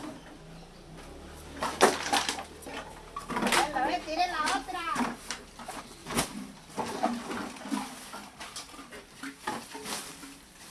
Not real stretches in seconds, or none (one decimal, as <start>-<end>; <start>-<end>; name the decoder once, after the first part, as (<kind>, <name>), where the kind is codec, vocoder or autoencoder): 2.7-5.5 (vocoder, BigVGAN v2); 6.0-6.8